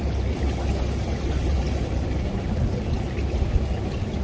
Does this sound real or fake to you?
real